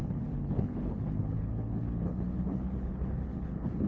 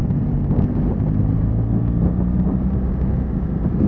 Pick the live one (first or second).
second